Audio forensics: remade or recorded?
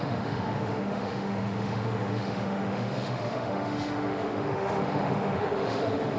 remade